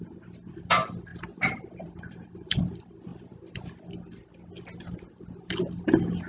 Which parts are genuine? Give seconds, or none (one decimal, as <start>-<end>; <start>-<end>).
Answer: 0.0-1.1; 2.6-3.1; 3.7-6.3